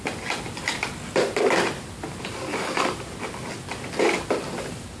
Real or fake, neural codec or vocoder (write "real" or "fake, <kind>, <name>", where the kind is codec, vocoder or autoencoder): real